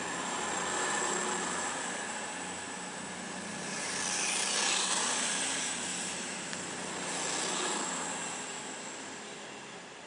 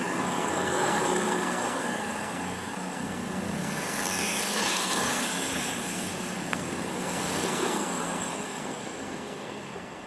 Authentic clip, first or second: first